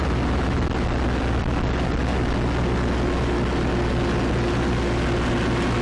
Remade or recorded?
recorded